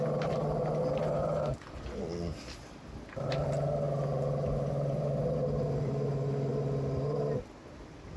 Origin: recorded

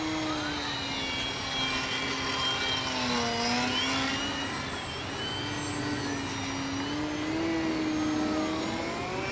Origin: recorded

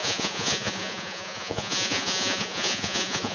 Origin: remade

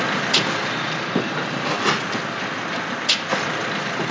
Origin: recorded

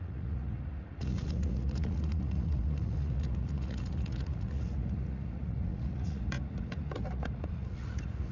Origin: remade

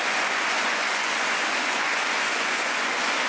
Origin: remade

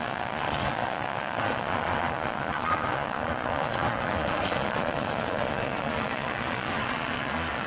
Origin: remade